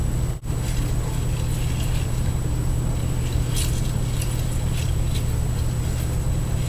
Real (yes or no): yes